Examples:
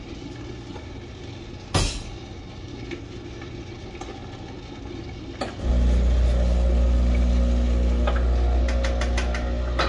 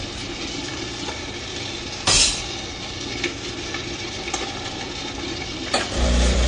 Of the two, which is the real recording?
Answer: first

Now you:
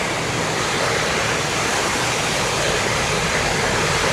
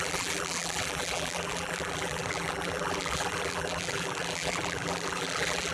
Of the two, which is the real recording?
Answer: first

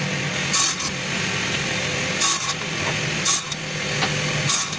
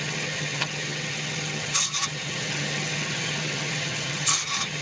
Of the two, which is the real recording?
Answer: first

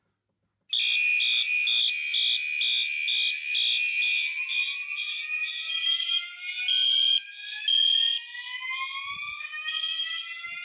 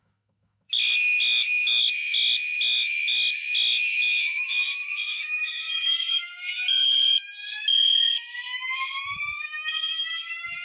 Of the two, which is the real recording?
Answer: first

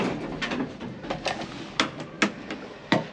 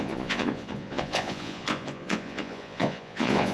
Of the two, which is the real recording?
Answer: first